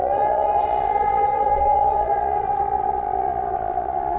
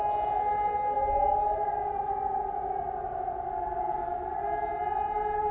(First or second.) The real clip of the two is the second